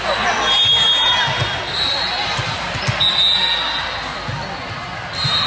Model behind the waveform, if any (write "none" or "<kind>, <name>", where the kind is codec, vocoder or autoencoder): none